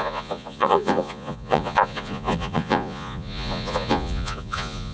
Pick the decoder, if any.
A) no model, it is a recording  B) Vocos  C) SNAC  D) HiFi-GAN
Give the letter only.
B